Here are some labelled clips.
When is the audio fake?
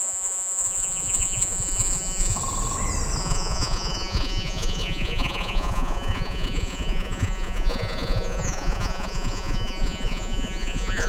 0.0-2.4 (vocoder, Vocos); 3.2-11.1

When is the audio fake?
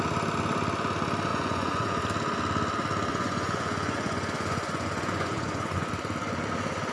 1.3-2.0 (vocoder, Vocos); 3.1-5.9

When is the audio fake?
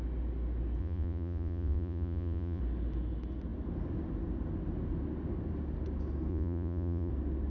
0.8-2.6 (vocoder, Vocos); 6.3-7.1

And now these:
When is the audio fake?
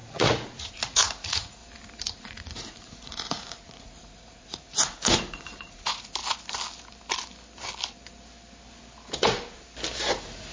0.0-1.6 (vocoder, Vocos); 2.1-6.2; 10.1-10.5